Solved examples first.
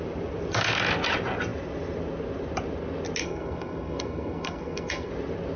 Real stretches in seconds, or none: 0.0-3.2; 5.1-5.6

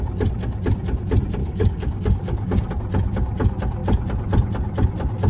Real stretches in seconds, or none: 0.0-1.4; 2.7-5.3

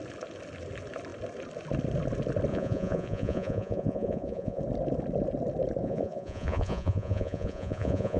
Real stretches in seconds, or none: 0.0-2.5; 4.6-5.8

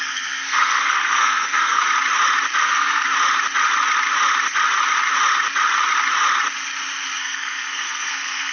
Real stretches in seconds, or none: 1.8-2.6; 3.1-7.2

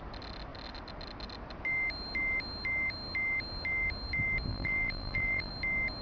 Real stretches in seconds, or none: 0.0-4.5; 5.5-6.0

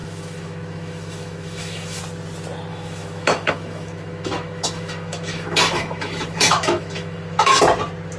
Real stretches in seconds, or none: 2.0-2.7; 7.6-8.2

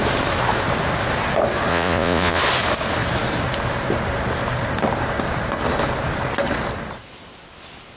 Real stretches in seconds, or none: 0.0-1.7; 2.4-8.0

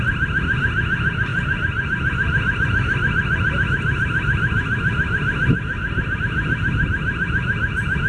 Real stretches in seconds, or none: 0.0-8.1